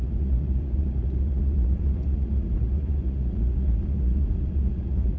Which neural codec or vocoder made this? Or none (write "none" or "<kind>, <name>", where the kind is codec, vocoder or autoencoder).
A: vocoder, Vocos